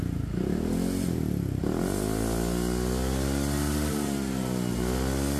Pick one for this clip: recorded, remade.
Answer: recorded